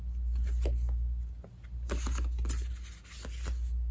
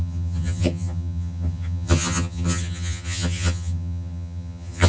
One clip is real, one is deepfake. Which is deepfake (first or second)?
second